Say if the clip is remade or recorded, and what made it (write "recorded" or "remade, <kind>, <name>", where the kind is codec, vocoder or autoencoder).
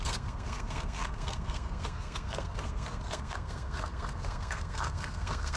remade, codec, SNAC